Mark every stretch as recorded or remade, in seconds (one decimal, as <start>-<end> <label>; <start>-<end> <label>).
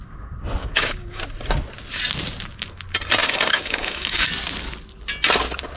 0.0-0.6 recorded; 0.6-1.2 remade; 1.2-3.2 recorded; 3.2-4.3 remade; 4.3-5.8 recorded